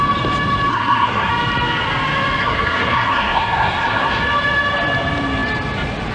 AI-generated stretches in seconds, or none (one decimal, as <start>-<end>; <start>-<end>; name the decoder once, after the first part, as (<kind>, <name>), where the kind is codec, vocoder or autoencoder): 0.7-1.3 (codec, SNAC); 2.4-4.2